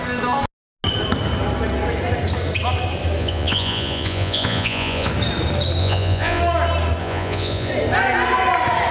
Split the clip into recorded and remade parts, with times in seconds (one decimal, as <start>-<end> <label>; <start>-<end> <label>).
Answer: 0.0-3.2 recorded; 3.2-5.1 remade; 5.1-5.8 recorded; 5.8-6.4 remade; 6.4-7.0 recorded; 7.0-7.7 remade; 7.7-8.9 recorded